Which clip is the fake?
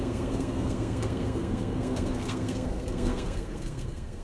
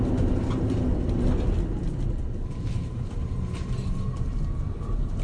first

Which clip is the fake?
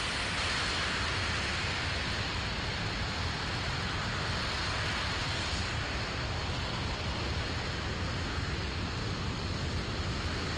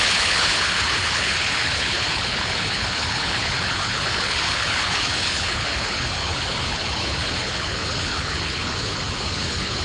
second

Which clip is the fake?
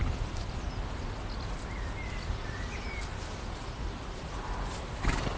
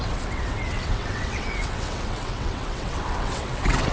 second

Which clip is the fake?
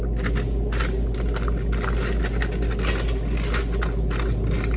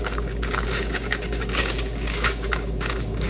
second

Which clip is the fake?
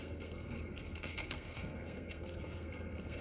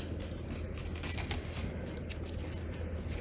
first